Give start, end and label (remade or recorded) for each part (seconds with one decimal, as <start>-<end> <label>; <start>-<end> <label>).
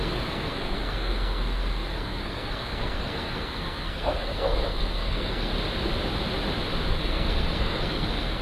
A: 0.0-5.5 remade; 5.5-6.9 recorded; 6.9-8.4 remade